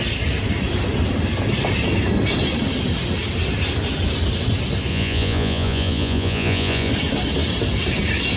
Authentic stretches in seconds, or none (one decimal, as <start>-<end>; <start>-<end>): 0.0-4.9; 6.9-8.4